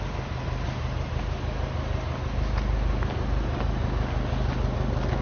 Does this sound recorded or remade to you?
recorded